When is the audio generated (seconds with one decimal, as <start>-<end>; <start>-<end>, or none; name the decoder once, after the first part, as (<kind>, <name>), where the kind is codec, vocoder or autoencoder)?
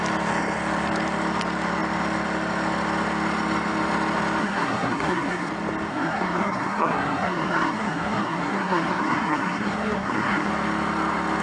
4.4-5.5 (codec, SNAC); 5.9-10.5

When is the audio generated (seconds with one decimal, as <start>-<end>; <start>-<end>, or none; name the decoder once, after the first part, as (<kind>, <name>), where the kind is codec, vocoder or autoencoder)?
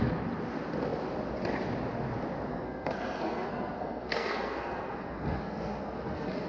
2.5-6.5 (codec, SNAC)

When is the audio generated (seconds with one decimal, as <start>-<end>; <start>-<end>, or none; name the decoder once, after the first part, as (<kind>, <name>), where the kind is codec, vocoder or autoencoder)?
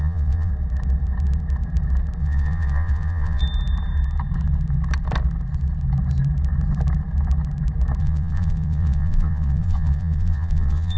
0.0-0.5 (vocoder, Vocos); 2.2-3.4; 8.0-11.0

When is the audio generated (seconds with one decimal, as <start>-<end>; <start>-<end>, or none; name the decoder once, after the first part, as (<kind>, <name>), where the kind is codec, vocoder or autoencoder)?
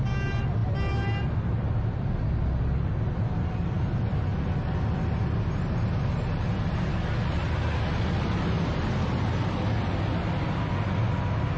none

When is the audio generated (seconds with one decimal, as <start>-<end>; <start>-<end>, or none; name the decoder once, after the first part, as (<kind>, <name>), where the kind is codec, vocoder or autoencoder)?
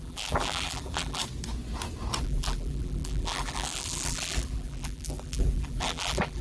0.0-1.2 (vocoder, BigVGAN v2); 2.2-6.4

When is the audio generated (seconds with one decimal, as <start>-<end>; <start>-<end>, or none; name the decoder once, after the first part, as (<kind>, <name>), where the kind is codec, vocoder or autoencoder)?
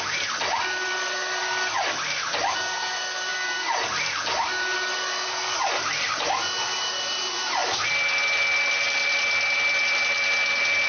none